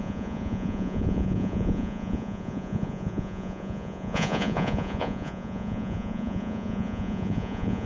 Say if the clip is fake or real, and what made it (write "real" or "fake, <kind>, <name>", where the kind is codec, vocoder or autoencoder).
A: fake, vocoder, Vocos